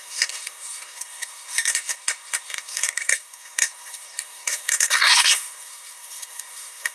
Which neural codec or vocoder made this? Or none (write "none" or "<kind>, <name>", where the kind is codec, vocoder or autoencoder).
codec, SNAC